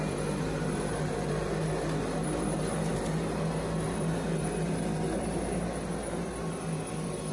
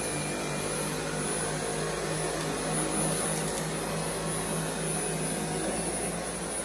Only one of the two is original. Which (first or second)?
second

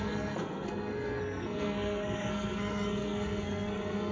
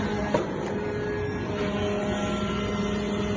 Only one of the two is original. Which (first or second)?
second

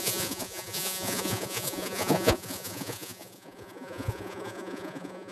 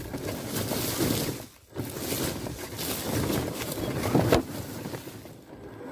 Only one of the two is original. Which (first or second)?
second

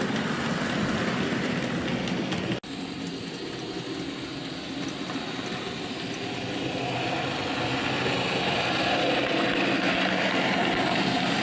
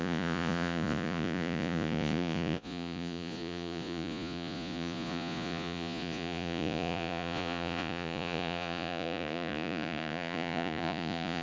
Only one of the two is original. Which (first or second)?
first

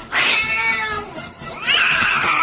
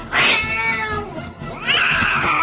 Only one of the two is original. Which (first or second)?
second